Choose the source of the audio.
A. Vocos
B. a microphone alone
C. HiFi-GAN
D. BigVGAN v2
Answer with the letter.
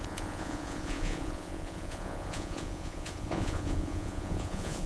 A